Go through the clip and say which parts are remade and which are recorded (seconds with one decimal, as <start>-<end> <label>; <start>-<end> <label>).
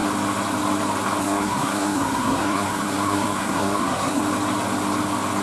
0.0-1.2 recorded; 1.2-4.2 remade; 4.2-5.4 recorded